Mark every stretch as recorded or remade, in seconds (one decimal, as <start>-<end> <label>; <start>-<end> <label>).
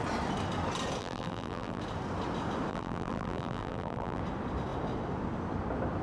0.0-1.0 recorded; 1.0-1.8 remade; 1.8-2.7 recorded; 2.7-4.2 remade; 4.2-6.0 recorded